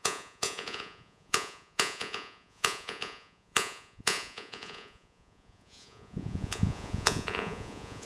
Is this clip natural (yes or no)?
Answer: no